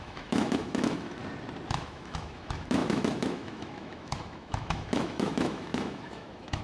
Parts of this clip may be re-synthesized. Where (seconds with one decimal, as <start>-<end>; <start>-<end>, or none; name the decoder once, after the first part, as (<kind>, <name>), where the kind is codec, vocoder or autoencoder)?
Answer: 0.0-1.2 (autoencoder, DAC-VAE); 1.7-6.6